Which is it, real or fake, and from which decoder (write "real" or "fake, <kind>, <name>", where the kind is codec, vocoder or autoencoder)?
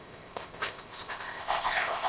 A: fake, codec, ZipCodec